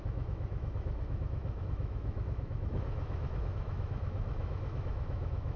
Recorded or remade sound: remade